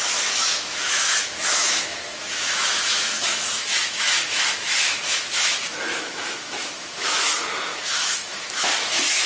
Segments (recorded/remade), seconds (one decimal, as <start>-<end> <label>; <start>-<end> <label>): 0.0-9.3 remade